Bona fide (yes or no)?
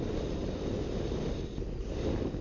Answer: yes